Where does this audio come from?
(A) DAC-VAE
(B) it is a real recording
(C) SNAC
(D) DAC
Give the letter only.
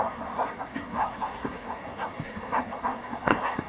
C